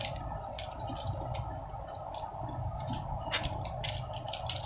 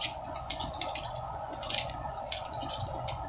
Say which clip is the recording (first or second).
first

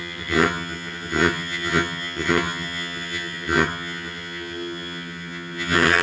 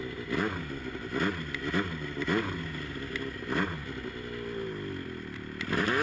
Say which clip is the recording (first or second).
second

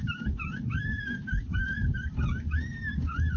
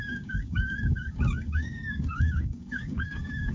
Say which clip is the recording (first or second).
first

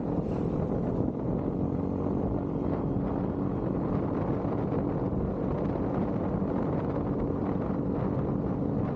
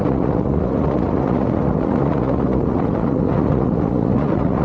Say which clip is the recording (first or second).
first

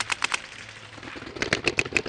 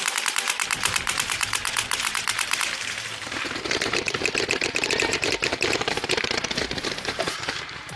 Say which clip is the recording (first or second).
first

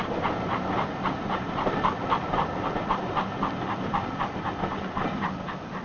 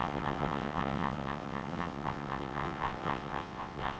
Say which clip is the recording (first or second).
first